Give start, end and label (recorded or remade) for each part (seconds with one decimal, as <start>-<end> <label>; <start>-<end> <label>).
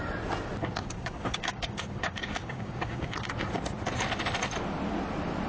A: 0.0-0.8 recorded; 0.8-3.3 remade; 3.3-5.5 recorded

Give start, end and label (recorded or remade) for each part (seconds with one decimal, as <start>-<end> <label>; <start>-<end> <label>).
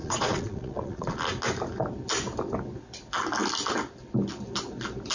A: 0.0-1.2 remade; 1.2-5.1 recorded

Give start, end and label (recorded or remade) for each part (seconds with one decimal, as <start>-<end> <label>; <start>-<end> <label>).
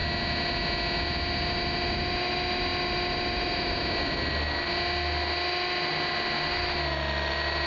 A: 0.0-7.7 recorded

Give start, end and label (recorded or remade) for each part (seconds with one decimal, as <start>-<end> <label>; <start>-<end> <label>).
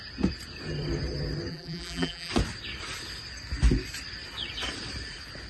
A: 0.0-1.5 recorded; 1.5-2.3 remade; 2.3-5.5 recorded